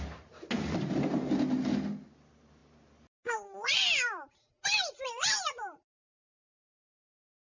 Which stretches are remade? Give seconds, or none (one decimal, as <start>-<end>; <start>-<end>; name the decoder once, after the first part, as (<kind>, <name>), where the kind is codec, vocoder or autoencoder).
none